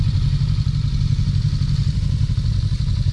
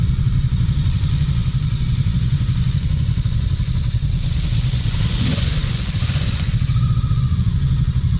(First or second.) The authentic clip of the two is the first